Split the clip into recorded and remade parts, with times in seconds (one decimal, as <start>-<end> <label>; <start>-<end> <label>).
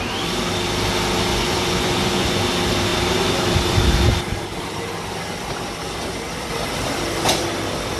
0.0-1.3 recorded; 1.3-2.4 remade; 2.4-8.0 recorded